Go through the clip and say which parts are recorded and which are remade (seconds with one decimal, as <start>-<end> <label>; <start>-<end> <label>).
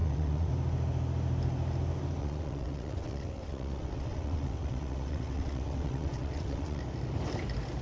0.0-0.5 remade; 0.5-2.2 recorded; 2.2-6.8 remade; 6.8-7.8 recorded